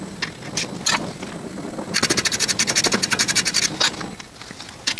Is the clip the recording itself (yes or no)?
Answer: yes